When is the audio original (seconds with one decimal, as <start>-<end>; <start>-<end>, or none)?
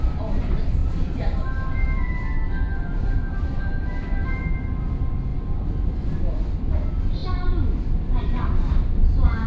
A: 0.0-0.8; 4.4-9.5